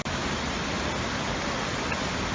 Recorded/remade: recorded